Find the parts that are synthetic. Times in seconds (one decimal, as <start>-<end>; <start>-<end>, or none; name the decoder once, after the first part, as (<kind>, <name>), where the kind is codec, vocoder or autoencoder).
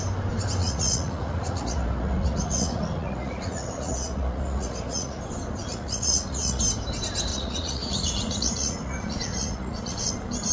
0.6-5.2 (vocoder, Vocos); 5.7-6.6; 7.3-10.1